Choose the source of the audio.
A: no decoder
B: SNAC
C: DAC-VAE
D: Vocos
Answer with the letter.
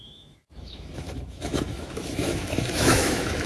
C